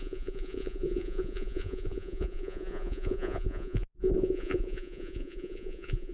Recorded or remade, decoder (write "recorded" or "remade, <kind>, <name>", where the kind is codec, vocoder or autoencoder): remade, vocoder, Vocos